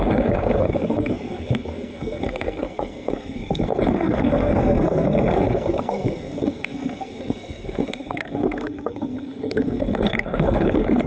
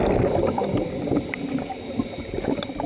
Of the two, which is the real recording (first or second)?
second